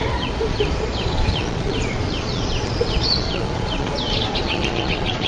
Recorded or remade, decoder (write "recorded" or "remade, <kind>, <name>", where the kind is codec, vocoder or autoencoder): remade, vocoder, Vocos